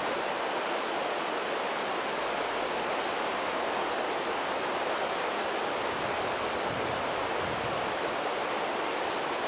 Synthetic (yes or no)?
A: no